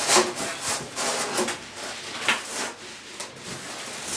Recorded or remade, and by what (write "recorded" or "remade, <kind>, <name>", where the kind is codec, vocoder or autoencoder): recorded